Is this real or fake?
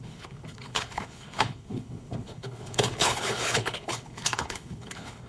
fake